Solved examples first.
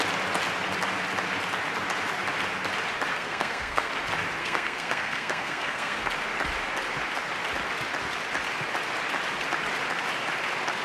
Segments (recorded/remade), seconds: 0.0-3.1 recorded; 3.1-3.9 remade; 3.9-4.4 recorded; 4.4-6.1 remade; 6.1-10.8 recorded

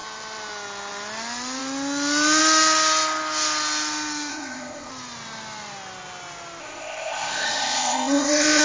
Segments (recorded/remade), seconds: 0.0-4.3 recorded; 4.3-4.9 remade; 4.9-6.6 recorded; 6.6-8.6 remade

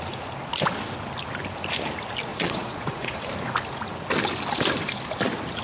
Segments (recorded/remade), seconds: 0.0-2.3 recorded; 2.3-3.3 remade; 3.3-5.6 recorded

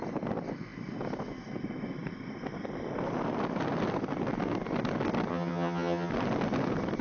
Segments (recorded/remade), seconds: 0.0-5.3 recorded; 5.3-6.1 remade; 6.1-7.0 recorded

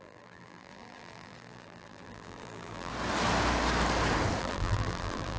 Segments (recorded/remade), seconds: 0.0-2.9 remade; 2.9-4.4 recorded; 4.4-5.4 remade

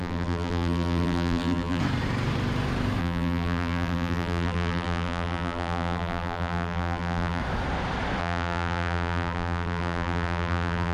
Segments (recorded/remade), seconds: 0.0-1.8 remade; 1.8-3.0 recorded; 3.0-7.4 remade; 7.4-8.2 recorded; 8.2-10.9 remade

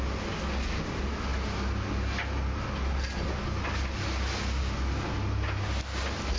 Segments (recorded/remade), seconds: 0.0-6.4 recorded

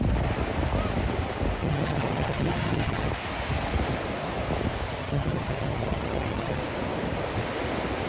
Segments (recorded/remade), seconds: 0.0-1.6 recorded; 1.6-3.1 remade; 3.1-5.0 recorded; 5.0-6.6 remade; 6.6-8.1 recorded